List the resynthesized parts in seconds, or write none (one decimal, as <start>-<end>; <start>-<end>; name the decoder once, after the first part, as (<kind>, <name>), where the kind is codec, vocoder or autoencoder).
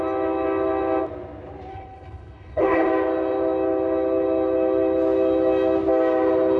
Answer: 1.7-2.9 (codec, HILCodec)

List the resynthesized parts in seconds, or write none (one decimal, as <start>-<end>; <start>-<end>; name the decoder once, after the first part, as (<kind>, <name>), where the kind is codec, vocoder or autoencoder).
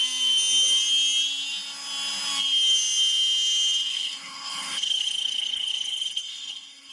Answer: 3.9-6.9 (codec, HILCodec)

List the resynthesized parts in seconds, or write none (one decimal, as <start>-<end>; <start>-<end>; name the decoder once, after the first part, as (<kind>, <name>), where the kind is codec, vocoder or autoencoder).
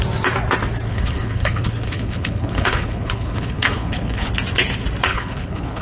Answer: 0.9-4.3 (codec, HILCodec); 5.1-5.8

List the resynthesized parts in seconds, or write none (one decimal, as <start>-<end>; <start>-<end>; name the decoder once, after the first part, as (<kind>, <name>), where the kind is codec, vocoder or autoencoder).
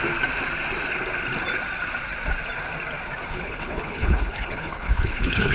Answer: 3.3-5.5 (codec, HILCodec)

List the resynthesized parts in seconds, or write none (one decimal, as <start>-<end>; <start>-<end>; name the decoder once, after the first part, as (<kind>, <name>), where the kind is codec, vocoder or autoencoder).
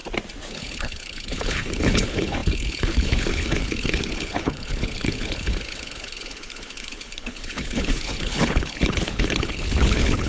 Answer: 0.5-10.3 (codec, HILCodec)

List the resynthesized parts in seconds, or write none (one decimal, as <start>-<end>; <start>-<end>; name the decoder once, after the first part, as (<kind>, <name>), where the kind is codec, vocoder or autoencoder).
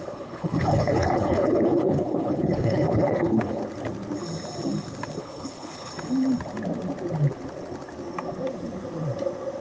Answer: 0.0-3.6 (codec, HILCodec); 5.2-5.9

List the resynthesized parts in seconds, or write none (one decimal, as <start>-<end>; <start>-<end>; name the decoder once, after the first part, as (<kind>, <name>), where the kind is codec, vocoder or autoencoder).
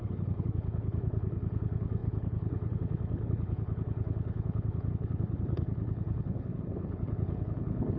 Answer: 0.0-8.0 (codec, HILCodec)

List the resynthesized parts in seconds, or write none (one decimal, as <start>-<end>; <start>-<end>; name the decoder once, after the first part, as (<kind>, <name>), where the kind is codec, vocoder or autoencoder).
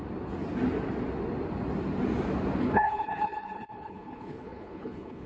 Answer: 2.6-5.3 (codec, HILCodec)